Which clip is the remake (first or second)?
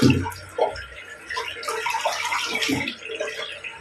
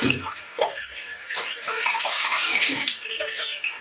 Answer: second